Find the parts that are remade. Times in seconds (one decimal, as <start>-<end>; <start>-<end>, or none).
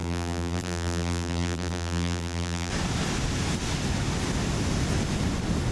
0.0-2.7